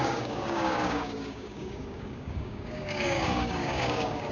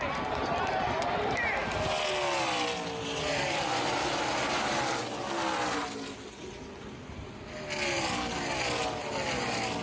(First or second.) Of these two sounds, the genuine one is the second